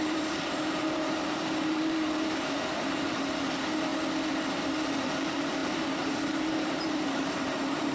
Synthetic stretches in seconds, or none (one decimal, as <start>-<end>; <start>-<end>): 0.0-3.9; 4.5-7.9